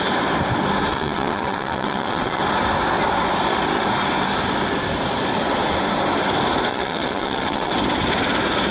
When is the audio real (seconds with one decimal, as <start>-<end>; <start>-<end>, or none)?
0.0-0.9; 2.4-6.7; 7.7-8.7